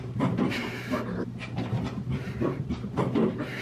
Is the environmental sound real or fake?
fake